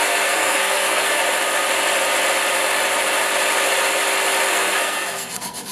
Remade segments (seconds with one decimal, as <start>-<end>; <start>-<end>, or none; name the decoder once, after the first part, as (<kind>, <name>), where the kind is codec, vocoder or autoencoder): 0.0-1.2 (codec, SNAC); 4.5-5.7